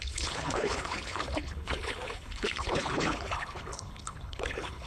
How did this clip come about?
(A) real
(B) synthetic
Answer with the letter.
B